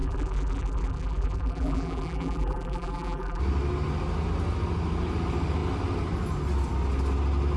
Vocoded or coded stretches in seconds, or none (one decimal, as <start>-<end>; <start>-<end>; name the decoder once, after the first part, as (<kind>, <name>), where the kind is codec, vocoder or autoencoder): 0.0-3.4 (vocoder, BigVGAN v2)